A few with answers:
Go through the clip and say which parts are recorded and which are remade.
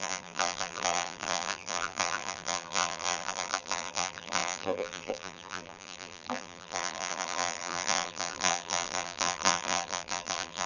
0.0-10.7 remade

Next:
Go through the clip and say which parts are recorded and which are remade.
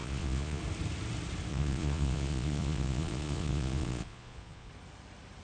0.0-0.6 remade; 0.6-1.5 recorded; 1.5-4.7 remade; 4.7-5.4 recorded